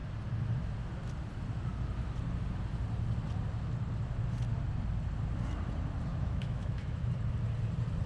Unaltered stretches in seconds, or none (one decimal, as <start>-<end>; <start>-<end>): 0.0-6.1; 7.1-8.1